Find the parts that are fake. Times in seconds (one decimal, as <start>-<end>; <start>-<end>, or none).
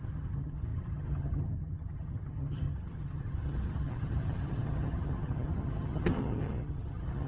0.0-7.3